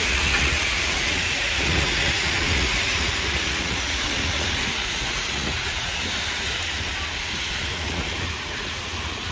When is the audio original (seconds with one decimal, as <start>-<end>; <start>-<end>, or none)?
6.0-7.5